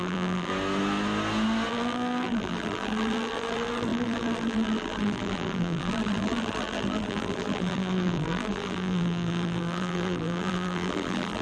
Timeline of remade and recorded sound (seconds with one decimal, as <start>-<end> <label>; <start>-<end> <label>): 0.0-0.5 remade; 0.5-1.7 recorded; 1.7-11.4 remade